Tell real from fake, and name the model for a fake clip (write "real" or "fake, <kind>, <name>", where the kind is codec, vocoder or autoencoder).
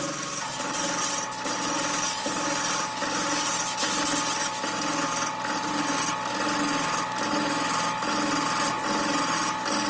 real